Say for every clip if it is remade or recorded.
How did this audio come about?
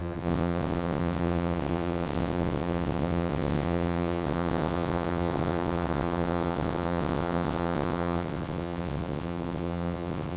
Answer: remade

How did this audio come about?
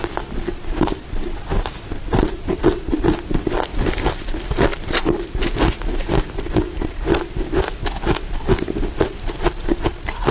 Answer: recorded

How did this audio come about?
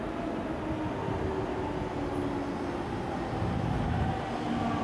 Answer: recorded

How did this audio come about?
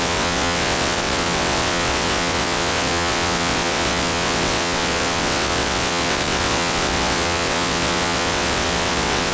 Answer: remade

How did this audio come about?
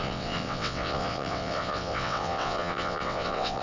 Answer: remade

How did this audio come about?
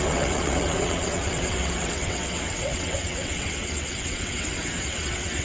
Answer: remade